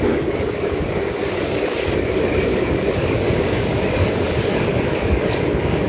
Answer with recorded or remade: remade